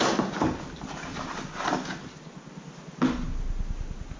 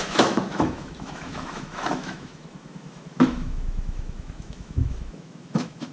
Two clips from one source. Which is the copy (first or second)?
second